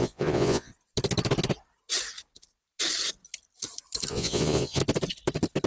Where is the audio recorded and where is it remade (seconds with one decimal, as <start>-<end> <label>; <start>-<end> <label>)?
0.0-0.7 remade; 0.7-4.1 recorded; 4.1-4.8 remade; 4.8-5.7 recorded